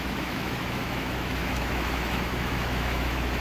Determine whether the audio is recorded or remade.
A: remade